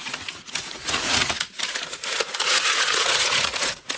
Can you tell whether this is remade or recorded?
remade